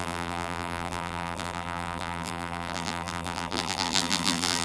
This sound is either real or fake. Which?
fake